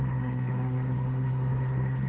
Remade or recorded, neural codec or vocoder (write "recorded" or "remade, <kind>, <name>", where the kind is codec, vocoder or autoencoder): remade, codec, SNAC